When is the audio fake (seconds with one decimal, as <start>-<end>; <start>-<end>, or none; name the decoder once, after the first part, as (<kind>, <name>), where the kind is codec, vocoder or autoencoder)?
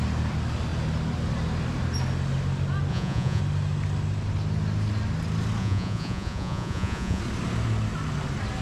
2.9-3.4 (vocoder, Vocos); 5.6-7.2